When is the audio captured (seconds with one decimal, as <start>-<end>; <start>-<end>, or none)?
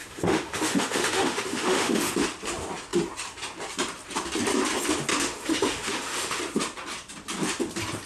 2.1-5.1; 6.4-8.1